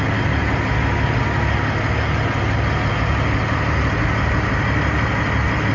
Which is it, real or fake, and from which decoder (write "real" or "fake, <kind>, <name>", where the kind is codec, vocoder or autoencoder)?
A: real